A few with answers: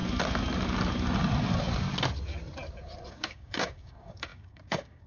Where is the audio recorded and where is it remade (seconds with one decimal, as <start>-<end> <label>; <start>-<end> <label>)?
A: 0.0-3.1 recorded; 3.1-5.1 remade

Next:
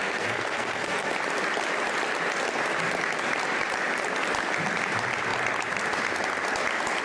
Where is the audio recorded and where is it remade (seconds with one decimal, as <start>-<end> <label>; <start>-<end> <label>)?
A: 0.0-1.1 remade; 1.1-7.0 recorded

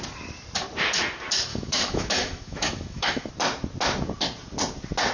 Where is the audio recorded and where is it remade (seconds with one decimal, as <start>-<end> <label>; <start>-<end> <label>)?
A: 0.0-1.5 recorded; 1.5-3.3 remade; 3.3-5.1 recorded